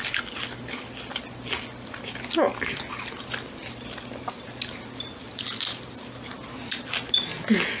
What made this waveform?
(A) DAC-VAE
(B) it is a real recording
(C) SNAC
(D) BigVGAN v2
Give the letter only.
B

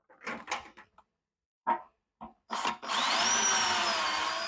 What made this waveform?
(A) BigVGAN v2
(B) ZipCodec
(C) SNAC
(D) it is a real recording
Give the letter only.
A